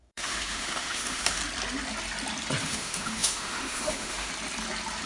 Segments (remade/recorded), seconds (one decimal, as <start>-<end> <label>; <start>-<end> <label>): 0.0-1.4 remade; 1.4-2.6 recorded; 2.6-4.3 remade; 4.3-5.1 recorded